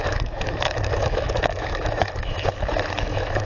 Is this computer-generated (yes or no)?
yes